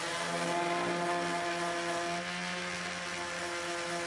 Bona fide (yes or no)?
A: yes